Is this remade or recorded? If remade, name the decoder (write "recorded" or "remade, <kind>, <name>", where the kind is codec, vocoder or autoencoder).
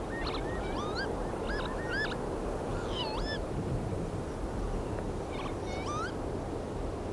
recorded